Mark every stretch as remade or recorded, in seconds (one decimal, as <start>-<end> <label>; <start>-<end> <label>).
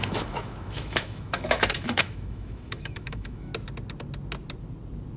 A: 0.0-3.5 remade; 3.5-5.2 recorded